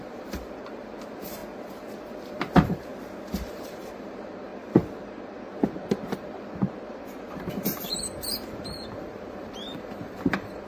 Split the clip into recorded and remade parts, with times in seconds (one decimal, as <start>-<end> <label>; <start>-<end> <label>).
0.0-1.4 remade; 1.4-2.0 recorded; 2.0-2.9 remade; 2.9-3.5 recorded; 3.5-4.5 remade; 4.5-7.4 recorded; 7.4-10.7 remade